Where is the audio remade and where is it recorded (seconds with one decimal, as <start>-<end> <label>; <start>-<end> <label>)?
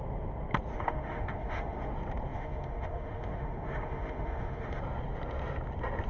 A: 0.0-0.7 recorded; 0.7-1.9 remade; 1.9-2.3 recorded; 2.3-4.8 remade; 4.8-6.1 recorded